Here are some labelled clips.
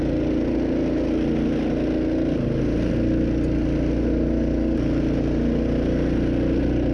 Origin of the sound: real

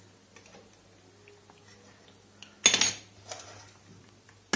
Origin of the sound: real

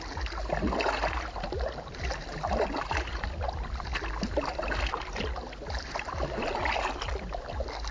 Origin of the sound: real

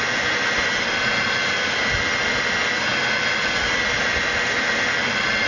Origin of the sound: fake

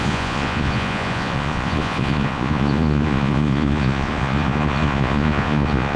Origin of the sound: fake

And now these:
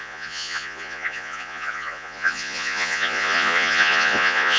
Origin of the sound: fake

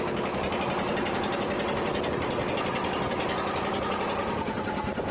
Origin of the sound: real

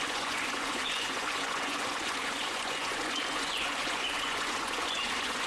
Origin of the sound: fake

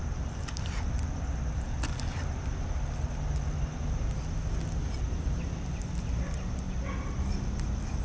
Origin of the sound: real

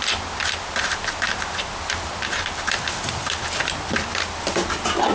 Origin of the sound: real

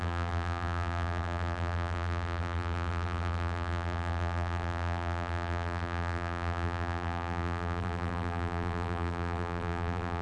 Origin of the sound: fake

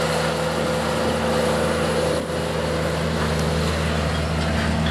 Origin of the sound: real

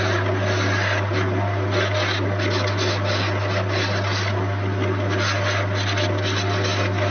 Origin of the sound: real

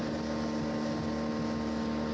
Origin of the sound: real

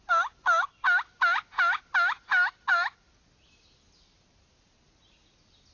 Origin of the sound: real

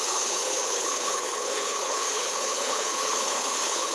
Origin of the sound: fake